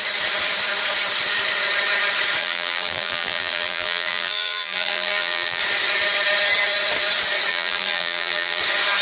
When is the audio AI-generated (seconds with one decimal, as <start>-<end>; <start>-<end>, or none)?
2.4-5.6; 7.5-8.6